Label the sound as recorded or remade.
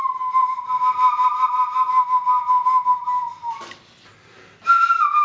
recorded